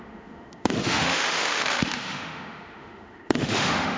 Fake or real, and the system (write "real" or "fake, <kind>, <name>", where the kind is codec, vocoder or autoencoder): fake, autoencoder, DAC-VAE